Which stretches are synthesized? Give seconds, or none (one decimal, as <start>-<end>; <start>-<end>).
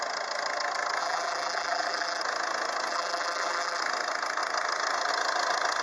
1.0-2.2; 2.9-3.8